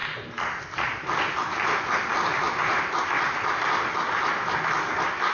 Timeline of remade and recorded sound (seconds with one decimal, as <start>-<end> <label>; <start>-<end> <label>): 0.0-5.3 recorded